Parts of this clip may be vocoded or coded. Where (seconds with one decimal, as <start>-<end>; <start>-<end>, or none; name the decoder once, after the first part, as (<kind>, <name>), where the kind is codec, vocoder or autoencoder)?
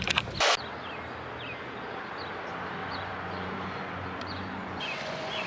2.8-5.5 (vocoder, Vocos)